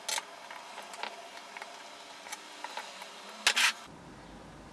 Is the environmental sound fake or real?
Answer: real